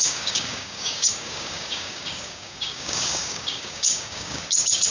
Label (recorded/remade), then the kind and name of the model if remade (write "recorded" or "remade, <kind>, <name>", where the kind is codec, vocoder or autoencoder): remade, codec, DAC